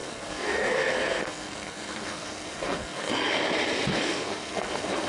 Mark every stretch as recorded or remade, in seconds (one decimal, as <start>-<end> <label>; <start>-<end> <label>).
0.0-3.1 remade; 3.1-3.9 recorded; 3.9-5.1 remade